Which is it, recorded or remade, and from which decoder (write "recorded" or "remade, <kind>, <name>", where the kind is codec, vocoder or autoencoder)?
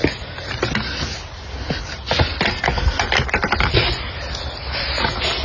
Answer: recorded